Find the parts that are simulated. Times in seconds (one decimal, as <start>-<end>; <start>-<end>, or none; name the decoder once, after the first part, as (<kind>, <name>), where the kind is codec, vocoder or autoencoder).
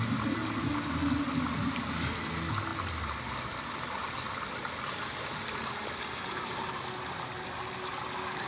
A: none